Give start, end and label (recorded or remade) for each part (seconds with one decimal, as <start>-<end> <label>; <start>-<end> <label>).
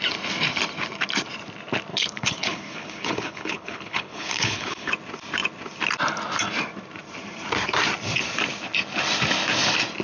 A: 0.0-1.9 recorded; 1.9-4.9 remade; 4.9-10.0 recorded